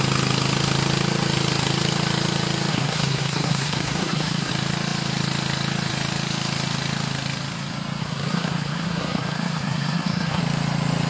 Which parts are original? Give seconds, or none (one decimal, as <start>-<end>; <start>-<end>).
0.0-2.7; 4.5-8.0; 10.4-11.1